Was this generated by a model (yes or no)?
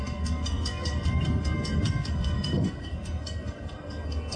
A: yes